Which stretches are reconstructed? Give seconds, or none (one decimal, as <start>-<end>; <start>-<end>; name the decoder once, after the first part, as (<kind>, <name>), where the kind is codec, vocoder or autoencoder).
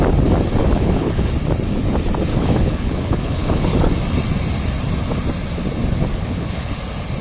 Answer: 0.6-1.3 (codec, HILCodec); 2.3-3.9; 6.1-6.7